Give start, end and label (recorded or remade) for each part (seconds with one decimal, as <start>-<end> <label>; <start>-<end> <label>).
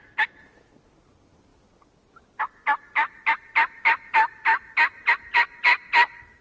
0.0-6.4 recorded